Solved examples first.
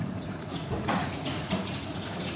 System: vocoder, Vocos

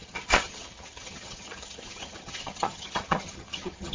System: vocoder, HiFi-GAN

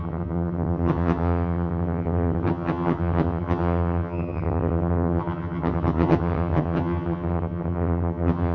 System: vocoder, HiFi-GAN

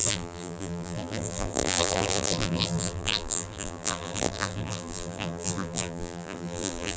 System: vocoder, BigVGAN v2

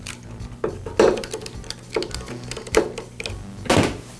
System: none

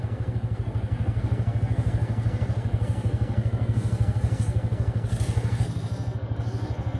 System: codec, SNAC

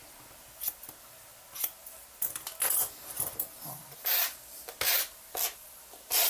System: none